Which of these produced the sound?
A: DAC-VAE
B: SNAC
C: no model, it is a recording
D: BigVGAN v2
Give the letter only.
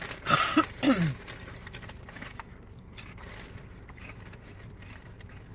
C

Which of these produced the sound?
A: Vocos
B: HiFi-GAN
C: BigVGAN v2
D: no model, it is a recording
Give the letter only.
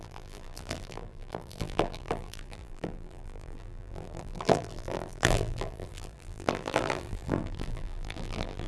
C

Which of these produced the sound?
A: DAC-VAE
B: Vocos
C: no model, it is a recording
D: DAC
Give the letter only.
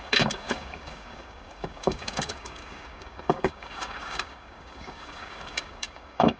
D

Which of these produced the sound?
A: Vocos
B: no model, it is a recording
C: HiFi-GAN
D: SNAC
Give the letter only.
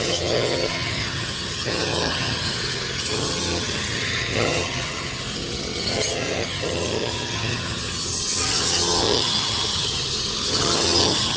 C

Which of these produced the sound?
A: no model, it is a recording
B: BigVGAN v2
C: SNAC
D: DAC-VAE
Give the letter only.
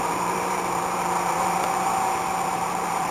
B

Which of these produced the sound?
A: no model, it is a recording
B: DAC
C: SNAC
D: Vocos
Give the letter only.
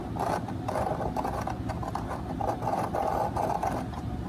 A